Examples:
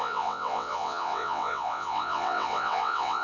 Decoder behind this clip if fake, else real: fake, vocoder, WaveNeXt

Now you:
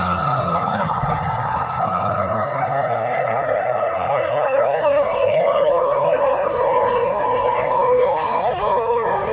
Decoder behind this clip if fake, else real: fake, codec, SNAC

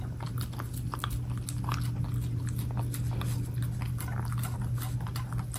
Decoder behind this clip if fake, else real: real